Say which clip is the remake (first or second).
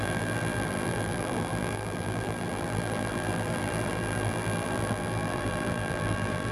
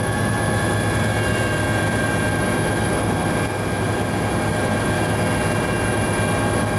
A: first